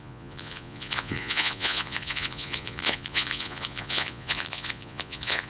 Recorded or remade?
remade